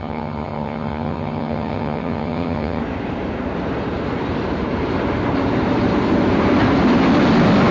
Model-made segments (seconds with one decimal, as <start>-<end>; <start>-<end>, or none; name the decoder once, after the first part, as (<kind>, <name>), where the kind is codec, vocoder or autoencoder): 0.0-2.8 (vocoder, HiFi-GAN)